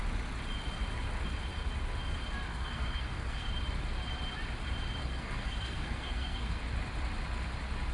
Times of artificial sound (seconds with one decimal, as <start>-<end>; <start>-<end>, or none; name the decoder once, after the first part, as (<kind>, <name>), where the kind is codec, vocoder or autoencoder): 2.5-3.5 (codec, SNAC); 5.0-6.6